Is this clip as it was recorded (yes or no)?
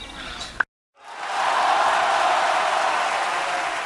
yes